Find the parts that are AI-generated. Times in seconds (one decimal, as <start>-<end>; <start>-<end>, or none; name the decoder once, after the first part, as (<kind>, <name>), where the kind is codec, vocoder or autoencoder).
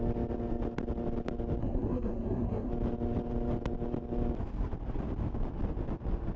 1.6-2.7 (codec, SNAC)